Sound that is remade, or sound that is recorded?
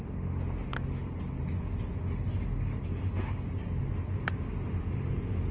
recorded